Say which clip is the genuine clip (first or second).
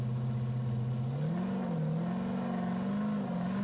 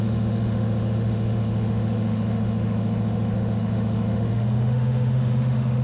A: first